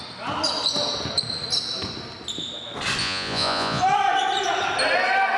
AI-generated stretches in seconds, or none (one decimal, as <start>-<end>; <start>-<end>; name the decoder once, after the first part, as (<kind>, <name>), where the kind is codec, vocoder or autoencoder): 3.0-3.8 (vocoder, Vocos)